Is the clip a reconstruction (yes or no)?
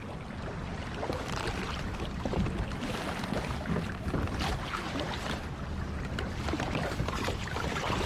no